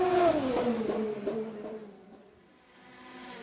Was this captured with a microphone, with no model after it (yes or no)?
yes